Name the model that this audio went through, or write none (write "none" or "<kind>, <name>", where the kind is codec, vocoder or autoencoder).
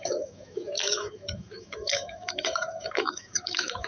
autoencoder, DAC-VAE